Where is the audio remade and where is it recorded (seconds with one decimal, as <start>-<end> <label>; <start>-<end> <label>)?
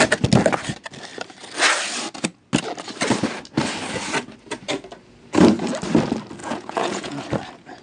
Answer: 0.0-6.4 recorded; 6.4-7.2 remade; 7.2-7.8 recorded